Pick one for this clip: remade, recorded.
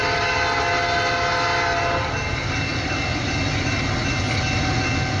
recorded